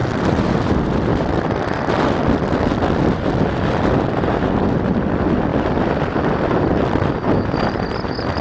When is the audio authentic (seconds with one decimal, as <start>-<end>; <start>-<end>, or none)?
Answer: 0.7-1.1; 1.9-8.4